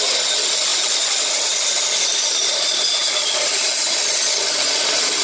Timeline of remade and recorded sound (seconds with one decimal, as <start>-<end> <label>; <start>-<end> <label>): 0.0-5.2 recorded

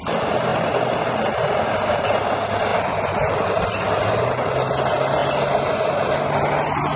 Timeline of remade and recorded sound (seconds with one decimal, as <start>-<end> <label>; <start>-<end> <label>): 0.0-7.0 recorded

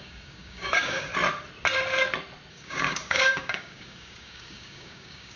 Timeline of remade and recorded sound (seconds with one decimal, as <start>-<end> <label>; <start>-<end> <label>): 0.0-1.1 remade; 1.1-2.5 recorded; 2.5-5.4 remade

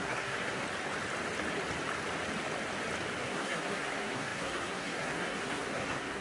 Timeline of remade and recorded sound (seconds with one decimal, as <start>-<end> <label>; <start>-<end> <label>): 0.0-0.6 remade; 0.6-3.2 recorded; 3.2-6.2 remade

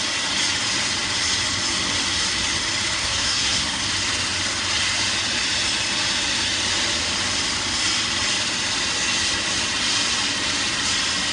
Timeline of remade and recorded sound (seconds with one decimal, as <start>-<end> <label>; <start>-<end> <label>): 0.0-3.0 recorded; 3.0-3.8 remade; 3.8-11.3 recorded